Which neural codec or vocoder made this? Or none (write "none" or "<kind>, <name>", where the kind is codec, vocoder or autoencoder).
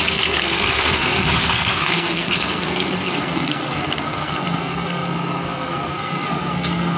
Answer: codec, SNAC